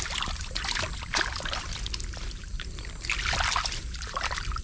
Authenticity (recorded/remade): recorded